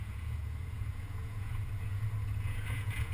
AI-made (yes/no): yes